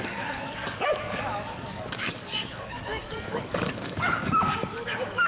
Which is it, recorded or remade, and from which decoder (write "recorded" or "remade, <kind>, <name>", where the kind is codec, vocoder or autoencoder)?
remade, codec, DAC